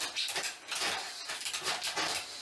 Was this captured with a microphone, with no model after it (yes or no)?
yes